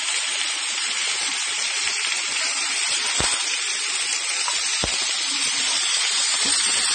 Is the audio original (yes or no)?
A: no